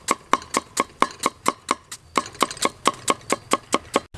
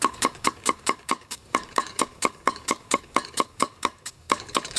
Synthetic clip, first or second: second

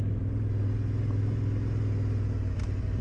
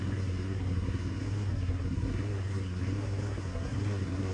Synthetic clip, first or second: second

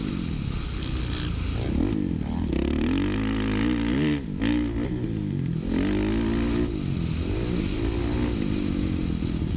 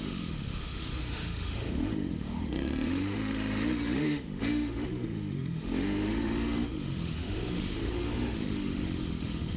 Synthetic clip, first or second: second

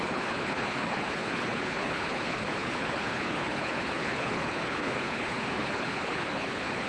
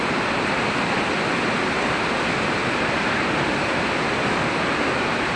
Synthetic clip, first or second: first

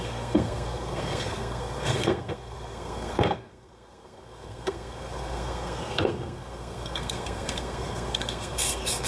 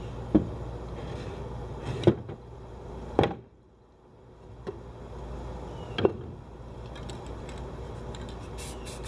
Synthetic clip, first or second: first